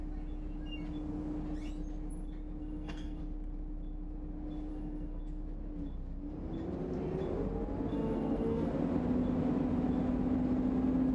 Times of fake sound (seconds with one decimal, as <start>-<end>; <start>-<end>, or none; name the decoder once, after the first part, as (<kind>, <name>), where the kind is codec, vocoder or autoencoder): 2.6-3.2 (codec, SNAC); 4.7-5.2; 7.9-8.7